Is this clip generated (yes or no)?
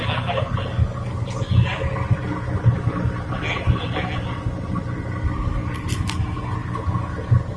no